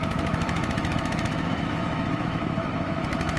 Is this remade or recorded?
remade